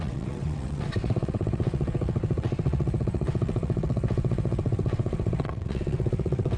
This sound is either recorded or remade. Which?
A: remade